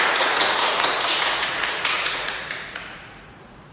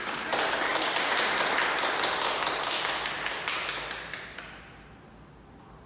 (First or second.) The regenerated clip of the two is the first